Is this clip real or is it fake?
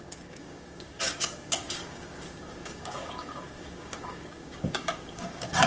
fake